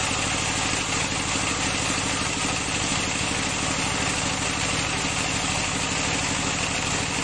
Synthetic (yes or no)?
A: no